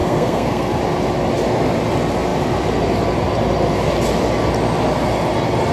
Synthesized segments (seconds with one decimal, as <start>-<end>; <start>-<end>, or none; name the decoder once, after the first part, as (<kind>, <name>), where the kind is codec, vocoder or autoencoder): 0.0-0.8 (codec, SNAC)